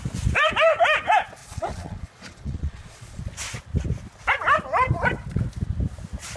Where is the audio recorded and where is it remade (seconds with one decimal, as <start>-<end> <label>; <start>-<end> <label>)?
0.0-1.4 recorded; 1.4-3.2 remade; 3.2-6.4 recorded